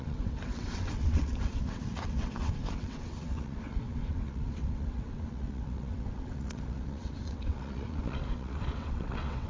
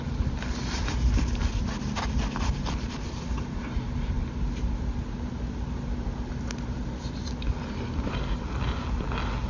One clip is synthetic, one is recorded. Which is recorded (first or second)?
second